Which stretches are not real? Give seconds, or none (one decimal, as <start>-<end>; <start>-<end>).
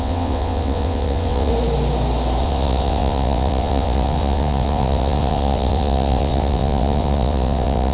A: 0.0-1.5; 2.4-7.9